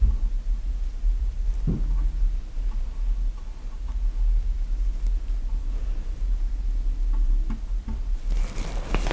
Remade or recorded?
recorded